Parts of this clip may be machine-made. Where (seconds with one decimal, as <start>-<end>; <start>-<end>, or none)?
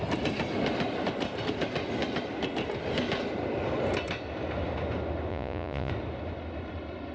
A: 5.3-5.9